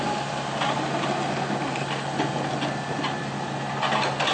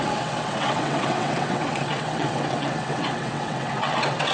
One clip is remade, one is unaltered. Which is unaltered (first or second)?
first